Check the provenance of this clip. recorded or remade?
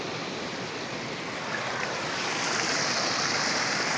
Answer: remade